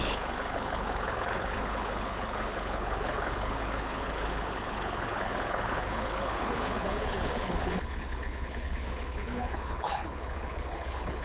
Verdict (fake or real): fake